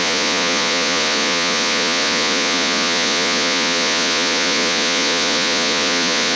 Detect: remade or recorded remade